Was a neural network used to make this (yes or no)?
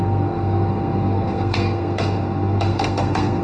yes